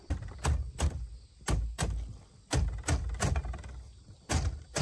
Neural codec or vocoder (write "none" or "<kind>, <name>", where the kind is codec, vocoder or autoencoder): none